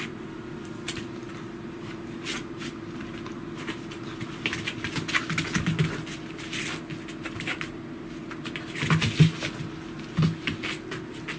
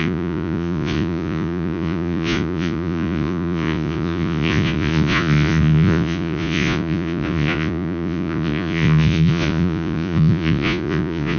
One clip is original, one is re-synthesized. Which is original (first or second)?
first